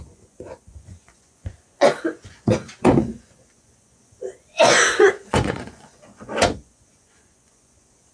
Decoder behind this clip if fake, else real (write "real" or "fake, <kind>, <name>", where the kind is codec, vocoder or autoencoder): fake, vocoder, Vocos